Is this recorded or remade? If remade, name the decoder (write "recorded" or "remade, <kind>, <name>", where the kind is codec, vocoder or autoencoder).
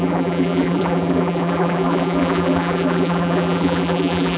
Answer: remade, vocoder, BigVGAN v2